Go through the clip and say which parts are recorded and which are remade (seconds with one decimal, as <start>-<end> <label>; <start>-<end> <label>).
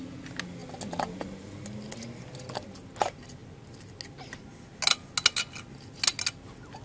0.0-6.8 recorded